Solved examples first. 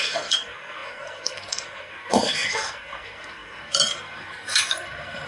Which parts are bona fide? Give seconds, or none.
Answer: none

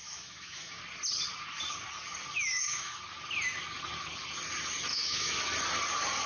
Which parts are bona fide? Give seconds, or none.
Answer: 0.8-2.5; 3.0-4.9; 5.4-6.3